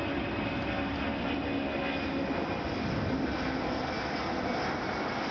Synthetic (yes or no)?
no